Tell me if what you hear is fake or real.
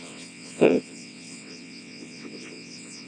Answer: fake